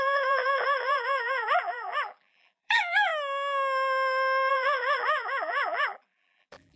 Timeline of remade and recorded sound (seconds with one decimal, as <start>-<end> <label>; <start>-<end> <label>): 0.0-3.1 remade; 3.1-4.5 recorded; 4.5-6.8 remade